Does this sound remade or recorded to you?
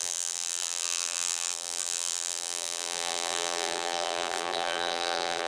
remade